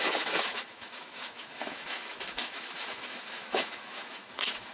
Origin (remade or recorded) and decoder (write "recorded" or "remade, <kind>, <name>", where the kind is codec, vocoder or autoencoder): remade, autoencoder, DAC-VAE